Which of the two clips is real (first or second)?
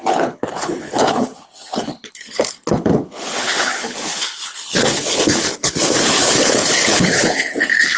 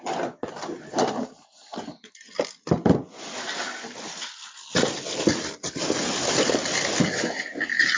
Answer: second